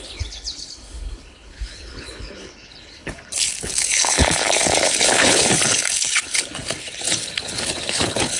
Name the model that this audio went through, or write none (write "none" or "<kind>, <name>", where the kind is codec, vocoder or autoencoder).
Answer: codec, HILCodec